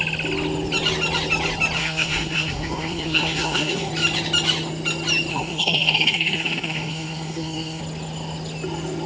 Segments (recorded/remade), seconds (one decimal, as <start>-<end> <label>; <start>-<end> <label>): 0.0-1.8 recorded; 1.8-3.9 remade; 3.9-5.3 recorded; 5.3-7.8 remade; 7.8-9.1 recorded